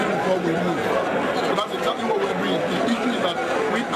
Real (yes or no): yes